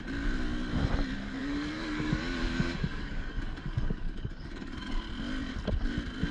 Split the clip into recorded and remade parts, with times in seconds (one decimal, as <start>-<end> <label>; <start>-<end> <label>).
0.0-1.4 recorded; 1.4-5.0 remade; 5.0-6.3 recorded